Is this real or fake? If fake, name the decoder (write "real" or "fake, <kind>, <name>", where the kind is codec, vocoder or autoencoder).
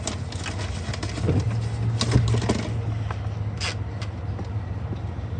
real